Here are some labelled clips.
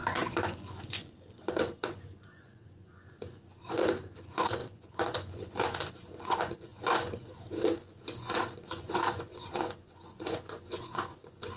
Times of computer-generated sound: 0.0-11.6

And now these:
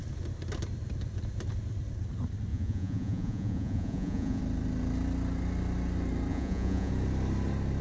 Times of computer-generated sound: 2.5-4.4; 6.3-6.9

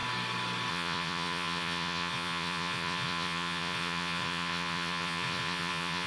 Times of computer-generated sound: 0.7-6.1

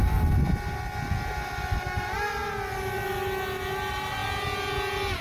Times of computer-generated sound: none

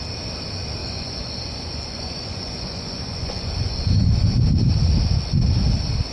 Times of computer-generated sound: 0.8-4.4

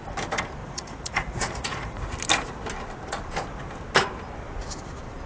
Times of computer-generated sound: 0.6-2.1

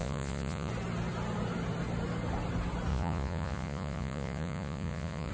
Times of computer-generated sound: 0.0-0.7; 2.9-5.3